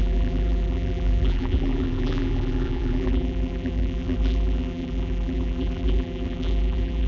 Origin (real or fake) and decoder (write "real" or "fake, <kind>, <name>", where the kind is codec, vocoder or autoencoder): fake, vocoder, BigVGAN v2